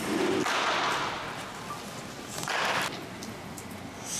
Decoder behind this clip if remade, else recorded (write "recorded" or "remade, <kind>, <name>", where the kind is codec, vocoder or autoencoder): recorded